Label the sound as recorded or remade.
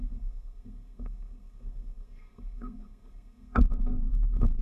remade